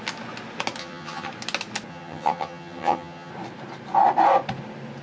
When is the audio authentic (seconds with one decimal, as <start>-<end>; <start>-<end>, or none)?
0.0-0.8; 1.3-1.9; 3.3-5.0